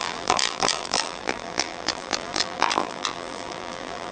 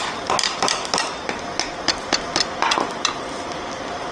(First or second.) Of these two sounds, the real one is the second